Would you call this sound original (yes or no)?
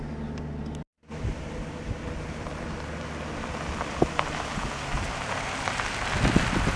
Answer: yes